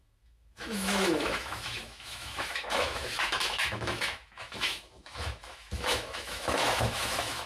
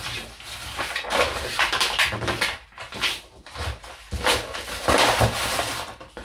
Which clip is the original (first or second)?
second